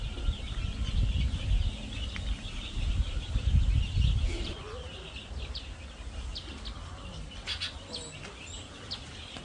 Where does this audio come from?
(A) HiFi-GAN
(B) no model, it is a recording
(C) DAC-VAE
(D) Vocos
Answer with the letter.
B